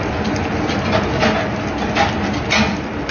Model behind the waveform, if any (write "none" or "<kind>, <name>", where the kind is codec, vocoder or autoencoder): none